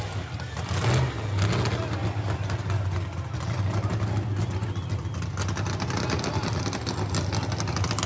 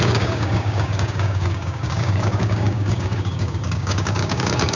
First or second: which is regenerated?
second